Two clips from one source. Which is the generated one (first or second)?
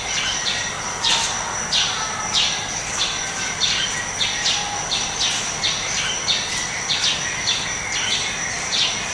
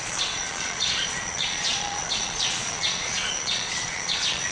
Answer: second